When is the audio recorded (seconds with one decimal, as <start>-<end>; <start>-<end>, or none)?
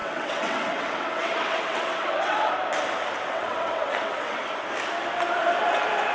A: 2.5-3.3; 4.4-6.1